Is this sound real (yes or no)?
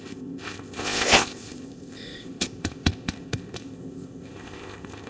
no